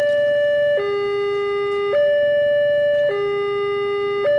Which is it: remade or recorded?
recorded